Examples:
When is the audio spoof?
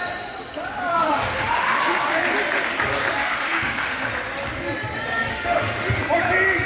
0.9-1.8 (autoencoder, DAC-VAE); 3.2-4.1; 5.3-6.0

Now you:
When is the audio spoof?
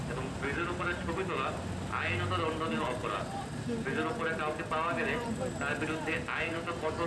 none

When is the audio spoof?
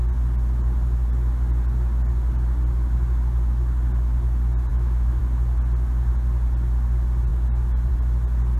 4.7-5.2 (autoencoder, DAC-VAE)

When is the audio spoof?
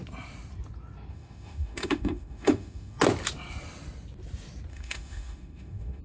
1.1-3.0 (autoencoder, DAC-VAE); 4.7-6.0